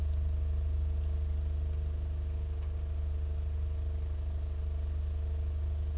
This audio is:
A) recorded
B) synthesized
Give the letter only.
A